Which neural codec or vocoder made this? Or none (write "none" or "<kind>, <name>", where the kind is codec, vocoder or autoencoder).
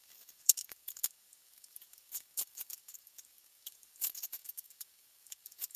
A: codec, DAC